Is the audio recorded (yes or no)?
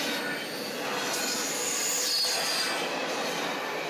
yes